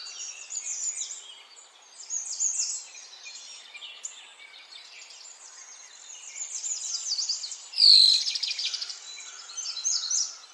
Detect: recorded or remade recorded